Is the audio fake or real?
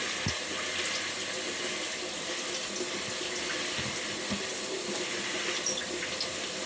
real